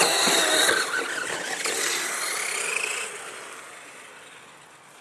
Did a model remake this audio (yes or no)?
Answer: no